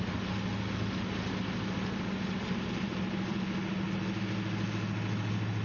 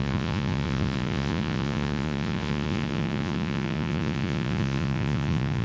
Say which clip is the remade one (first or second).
second